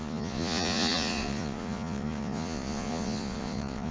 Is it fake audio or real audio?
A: fake